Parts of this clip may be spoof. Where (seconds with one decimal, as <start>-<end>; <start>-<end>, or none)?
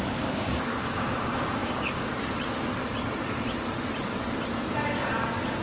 0.0-2.1